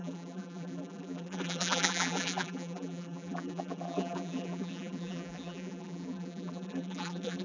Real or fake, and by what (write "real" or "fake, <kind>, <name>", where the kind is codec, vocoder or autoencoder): fake, vocoder, BigVGAN v2